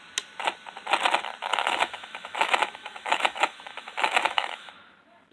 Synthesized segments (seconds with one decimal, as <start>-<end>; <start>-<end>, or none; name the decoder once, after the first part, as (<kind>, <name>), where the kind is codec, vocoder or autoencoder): 1.5-4.7 (autoencoder, DAC-VAE)